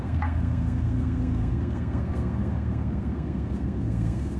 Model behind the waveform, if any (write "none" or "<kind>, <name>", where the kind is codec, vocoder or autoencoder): codec, SNAC